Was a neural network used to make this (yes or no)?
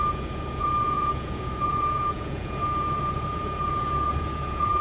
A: yes